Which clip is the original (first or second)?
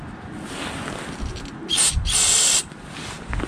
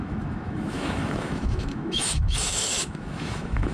first